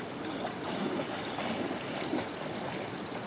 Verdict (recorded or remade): recorded